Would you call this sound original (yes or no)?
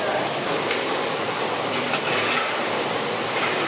yes